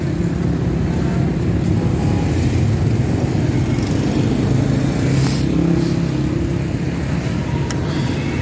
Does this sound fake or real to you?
real